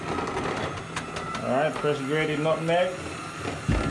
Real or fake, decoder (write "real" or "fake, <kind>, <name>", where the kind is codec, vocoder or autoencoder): real